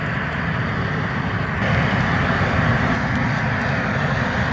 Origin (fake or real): real